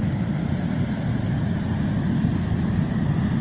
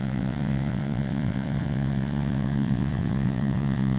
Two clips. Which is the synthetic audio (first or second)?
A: second